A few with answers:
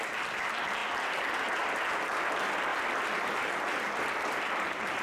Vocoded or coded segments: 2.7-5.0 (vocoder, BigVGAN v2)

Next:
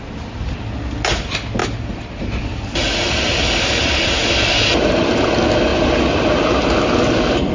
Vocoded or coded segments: 1.6-2.4 (vocoder, BigVGAN v2)

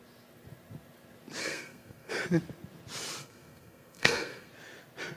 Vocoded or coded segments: 1.4-2.1 (codec, SNAC); 3.2-4.5